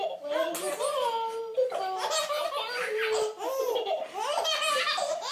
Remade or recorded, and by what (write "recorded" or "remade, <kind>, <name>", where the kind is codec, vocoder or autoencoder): recorded